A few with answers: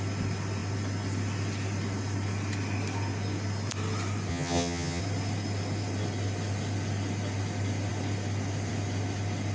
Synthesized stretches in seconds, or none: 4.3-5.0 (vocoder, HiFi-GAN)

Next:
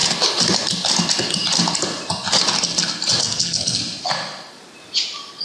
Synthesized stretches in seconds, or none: 3.2-3.8 (codec, SNAC)

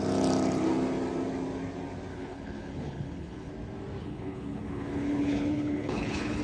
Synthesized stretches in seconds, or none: 2.1-3.5 (codec, HILCodec); 4.0-6.4